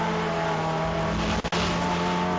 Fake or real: real